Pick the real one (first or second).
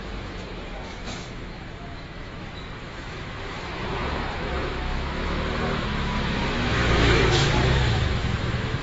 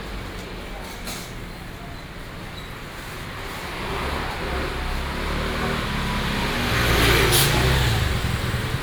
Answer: second